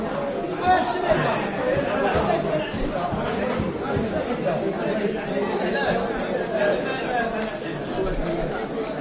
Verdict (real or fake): real